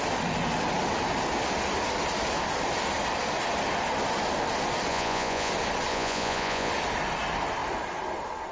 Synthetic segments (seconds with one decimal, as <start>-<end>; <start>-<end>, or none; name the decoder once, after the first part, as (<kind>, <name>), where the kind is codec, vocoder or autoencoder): 4.9-5.5 (vocoder, Vocos); 5.9-6.7